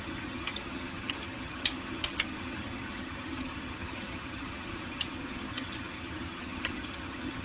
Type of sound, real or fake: fake